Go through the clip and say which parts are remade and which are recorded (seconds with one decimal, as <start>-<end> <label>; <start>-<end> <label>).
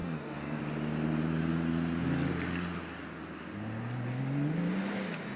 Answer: 0.0-0.6 remade; 0.6-5.4 recorded